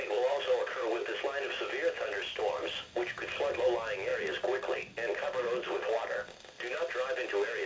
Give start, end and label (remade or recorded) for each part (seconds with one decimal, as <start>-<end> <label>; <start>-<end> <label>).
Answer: 0.0-7.7 recorded